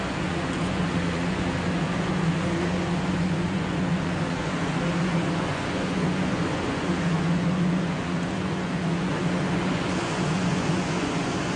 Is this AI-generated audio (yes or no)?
yes